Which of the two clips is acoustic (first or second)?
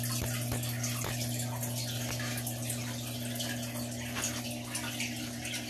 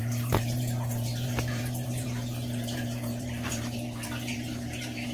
first